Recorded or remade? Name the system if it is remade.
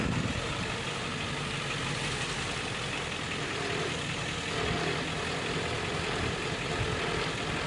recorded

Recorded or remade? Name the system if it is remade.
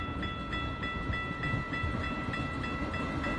recorded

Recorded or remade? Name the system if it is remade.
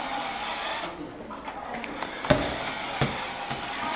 recorded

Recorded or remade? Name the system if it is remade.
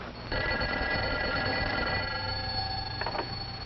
recorded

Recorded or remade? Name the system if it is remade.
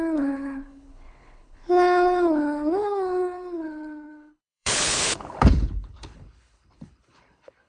remade, codec, HILCodec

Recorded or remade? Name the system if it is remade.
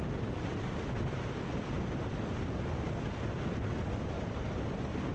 recorded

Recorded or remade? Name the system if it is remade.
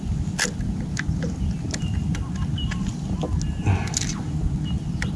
recorded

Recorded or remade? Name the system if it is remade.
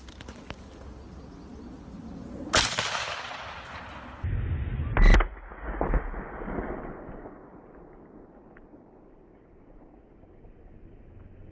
recorded